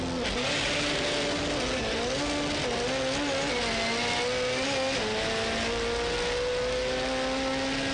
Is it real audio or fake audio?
real